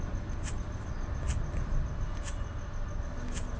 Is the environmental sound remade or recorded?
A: recorded